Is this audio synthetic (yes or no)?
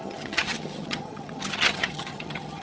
yes